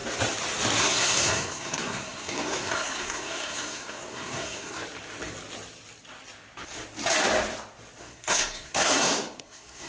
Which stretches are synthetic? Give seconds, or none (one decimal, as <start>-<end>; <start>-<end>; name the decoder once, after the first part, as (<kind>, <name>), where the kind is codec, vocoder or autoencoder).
0.8-4.8 (codec, SNAC); 8.0-9.9